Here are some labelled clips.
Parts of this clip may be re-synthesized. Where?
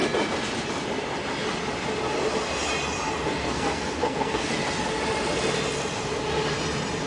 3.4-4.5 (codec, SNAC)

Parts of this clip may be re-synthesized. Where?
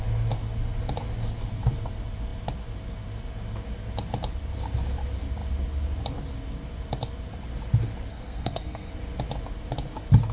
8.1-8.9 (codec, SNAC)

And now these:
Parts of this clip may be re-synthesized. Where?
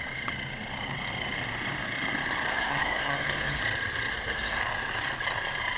2.5-3.6 (codec, SNAC); 4.1-4.6